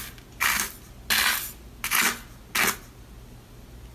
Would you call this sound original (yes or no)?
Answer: yes